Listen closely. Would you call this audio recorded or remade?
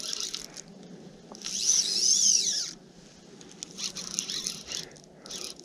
recorded